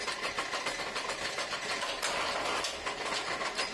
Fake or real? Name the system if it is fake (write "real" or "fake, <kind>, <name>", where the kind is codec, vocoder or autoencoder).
real